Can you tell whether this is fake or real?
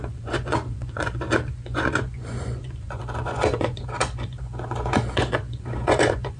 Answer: fake